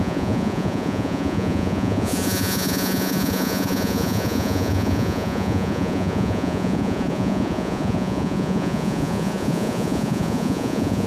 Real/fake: fake